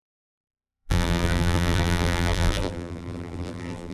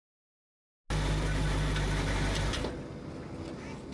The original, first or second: second